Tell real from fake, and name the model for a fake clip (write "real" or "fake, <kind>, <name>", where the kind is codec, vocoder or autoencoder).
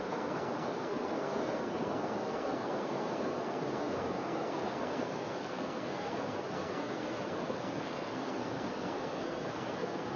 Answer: fake, codec, SNAC